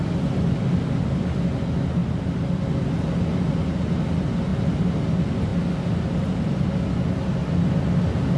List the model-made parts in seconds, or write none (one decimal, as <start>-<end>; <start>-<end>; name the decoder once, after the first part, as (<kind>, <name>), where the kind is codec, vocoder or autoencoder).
none